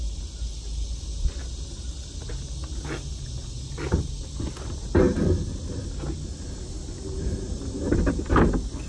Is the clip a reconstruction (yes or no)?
no